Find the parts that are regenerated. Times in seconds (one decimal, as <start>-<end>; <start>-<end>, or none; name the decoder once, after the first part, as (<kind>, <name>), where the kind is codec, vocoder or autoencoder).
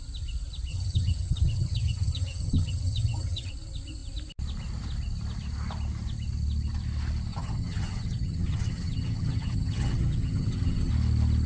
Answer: 0.7-3.5 (vocoder, HiFi-GAN); 7.3-10.9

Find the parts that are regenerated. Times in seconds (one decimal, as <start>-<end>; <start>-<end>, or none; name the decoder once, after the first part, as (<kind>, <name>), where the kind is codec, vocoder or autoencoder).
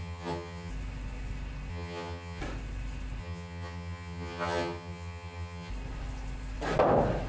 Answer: 0.0-0.7 (vocoder, HiFi-GAN); 1.7-2.4; 3.2-5.7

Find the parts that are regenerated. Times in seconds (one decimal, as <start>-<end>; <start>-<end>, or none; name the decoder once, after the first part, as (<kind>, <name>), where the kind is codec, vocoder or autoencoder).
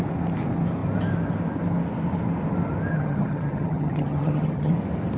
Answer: 2.9-4.7 (vocoder, HiFi-GAN)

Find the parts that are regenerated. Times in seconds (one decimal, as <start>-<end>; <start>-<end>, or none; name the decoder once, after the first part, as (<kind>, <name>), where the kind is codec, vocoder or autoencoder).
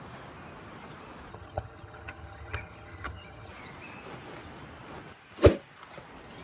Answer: 1.3-3.5 (vocoder, HiFi-GAN)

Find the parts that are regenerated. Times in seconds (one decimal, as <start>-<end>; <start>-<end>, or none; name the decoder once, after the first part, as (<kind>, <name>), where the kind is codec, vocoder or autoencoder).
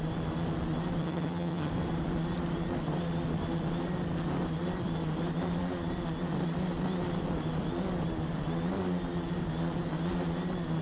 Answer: 1.0-1.7 (vocoder, HiFi-GAN)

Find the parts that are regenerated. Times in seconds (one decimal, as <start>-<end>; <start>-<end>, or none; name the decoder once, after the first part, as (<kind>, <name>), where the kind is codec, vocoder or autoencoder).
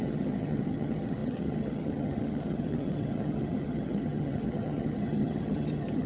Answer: 0.0-6.1 (vocoder, HiFi-GAN)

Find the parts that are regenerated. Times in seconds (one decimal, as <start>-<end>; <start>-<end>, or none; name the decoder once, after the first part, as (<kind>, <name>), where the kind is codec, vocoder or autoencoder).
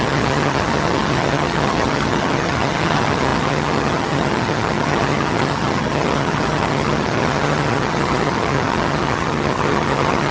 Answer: 0.0-10.3 (vocoder, HiFi-GAN)